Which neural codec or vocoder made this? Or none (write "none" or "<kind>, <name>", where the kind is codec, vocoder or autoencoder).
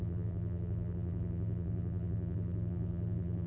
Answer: vocoder, BigVGAN v2